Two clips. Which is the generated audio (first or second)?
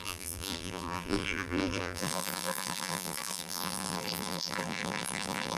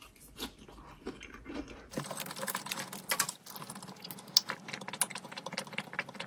first